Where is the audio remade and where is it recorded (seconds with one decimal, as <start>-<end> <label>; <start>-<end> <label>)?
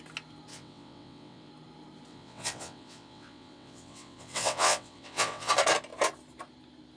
0.0-0.5 recorded; 0.5-1.5 remade; 1.5-2.1 recorded; 2.1-5.5 remade; 5.5-7.0 recorded